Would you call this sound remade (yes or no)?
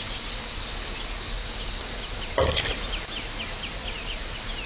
no